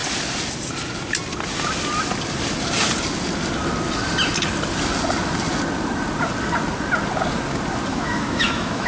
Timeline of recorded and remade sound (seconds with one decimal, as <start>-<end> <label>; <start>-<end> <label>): 0.0-7.9 recorded; 7.9-8.9 remade